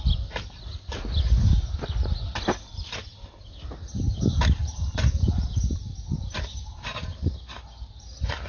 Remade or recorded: recorded